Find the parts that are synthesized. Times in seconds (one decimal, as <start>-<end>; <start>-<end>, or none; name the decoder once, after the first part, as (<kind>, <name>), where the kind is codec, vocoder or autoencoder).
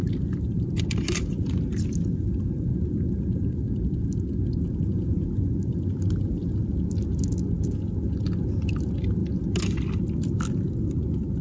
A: none